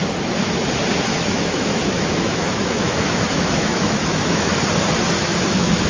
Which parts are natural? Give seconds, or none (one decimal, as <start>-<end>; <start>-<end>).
0.0-1.1; 4.6-5.2